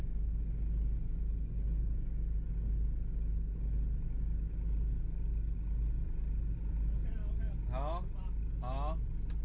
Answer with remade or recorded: recorded